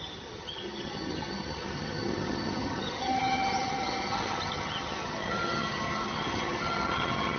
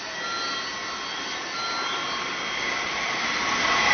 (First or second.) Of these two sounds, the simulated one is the first